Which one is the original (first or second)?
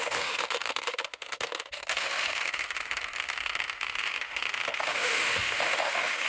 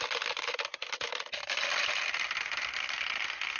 second